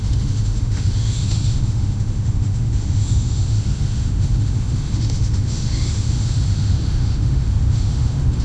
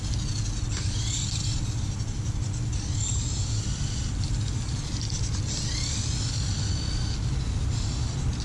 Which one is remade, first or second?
first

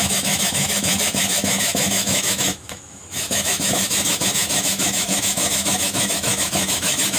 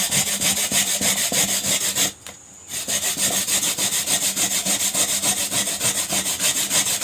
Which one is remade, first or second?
first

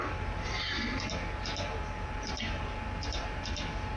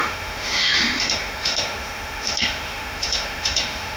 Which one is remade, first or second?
second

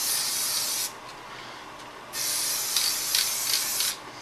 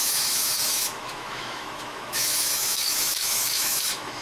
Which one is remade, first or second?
second